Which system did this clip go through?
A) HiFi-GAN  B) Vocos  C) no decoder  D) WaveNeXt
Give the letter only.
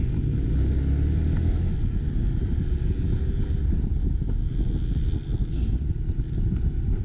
C